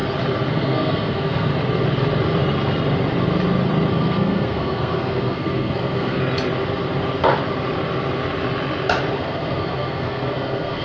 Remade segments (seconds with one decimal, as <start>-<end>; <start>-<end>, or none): 0.5-1.5; 3.9-6.2; 9.1-10.8